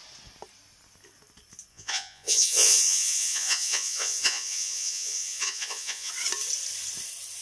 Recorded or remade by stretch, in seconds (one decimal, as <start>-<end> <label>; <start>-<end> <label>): 0.0-1.7 recorded; 1.7-6.1 remade; 6.1-7.4 recorded